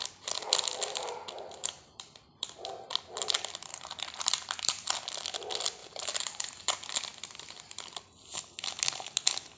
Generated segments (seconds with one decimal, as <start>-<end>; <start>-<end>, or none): 1.6-2.2; 3.7-4.7; 5.8-6.6